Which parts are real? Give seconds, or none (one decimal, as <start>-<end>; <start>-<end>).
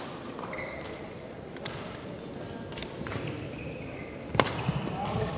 0.0-5.4